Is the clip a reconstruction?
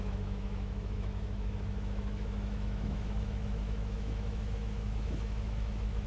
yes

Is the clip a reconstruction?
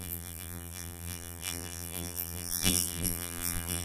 yes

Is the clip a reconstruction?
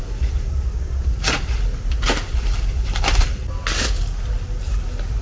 no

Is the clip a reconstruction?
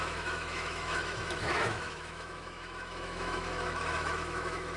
yes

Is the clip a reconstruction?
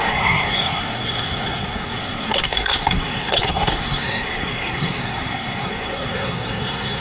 yes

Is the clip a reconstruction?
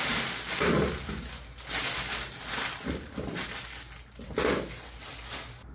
no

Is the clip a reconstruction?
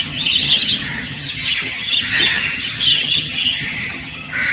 yes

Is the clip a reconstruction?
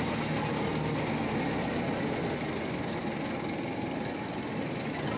no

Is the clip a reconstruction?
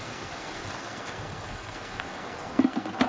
yes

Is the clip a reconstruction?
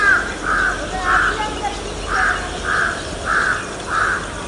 no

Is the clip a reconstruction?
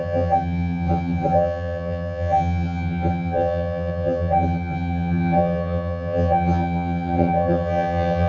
yes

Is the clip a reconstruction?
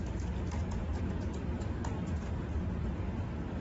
no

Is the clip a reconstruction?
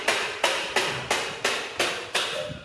yes